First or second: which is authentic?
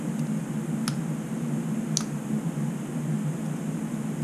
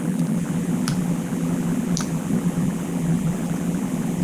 first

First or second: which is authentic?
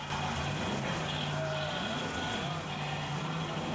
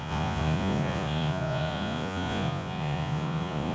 first